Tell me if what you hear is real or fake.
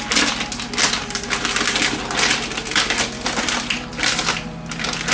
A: real